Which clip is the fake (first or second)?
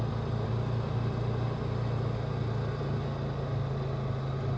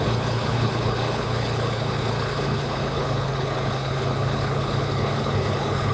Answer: second